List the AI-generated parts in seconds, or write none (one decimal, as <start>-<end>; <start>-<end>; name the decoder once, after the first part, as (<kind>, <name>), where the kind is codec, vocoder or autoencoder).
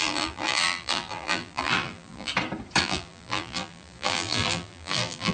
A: 0.0-2.3 (vocoder, BigVGAN v2); 2.8-5.3